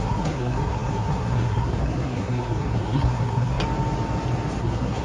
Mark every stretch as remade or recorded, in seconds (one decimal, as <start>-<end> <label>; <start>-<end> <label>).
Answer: 0.0-3.6 remade; 3.6-4.6 recorded; 4.6-5.0 remade